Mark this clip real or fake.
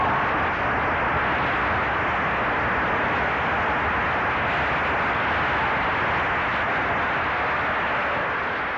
real